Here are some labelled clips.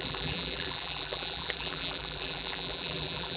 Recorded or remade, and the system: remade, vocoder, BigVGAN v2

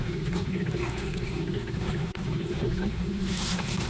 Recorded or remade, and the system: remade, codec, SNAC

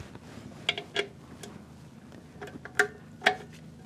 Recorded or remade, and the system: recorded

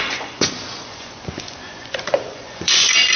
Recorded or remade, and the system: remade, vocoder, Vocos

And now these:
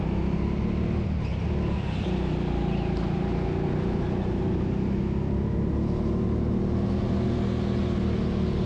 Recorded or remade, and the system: recorded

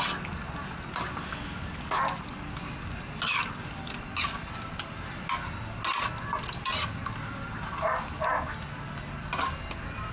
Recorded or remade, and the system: recorded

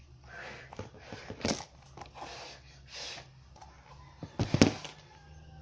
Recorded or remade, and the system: recorded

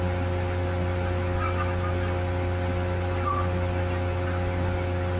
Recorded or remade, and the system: recorded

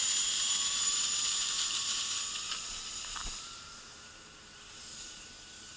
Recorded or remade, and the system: remade, vocoder, BigVGAN v2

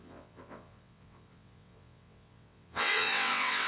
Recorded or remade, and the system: remade, vocoder, WaveNeXt